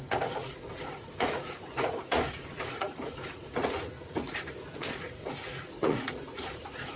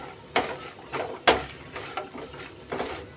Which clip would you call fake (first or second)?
first